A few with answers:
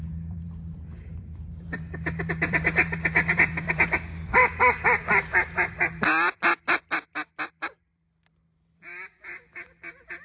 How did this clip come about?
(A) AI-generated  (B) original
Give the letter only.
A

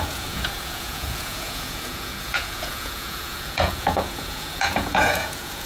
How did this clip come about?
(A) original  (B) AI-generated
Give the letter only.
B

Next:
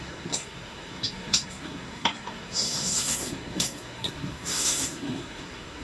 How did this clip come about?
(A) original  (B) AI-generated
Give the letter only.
B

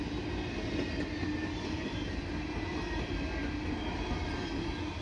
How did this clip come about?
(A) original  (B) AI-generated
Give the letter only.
A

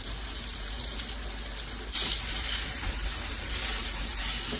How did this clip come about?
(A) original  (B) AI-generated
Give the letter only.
B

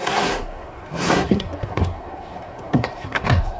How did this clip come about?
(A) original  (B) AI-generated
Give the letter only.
B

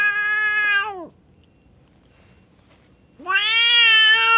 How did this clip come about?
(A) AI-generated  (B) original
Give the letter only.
B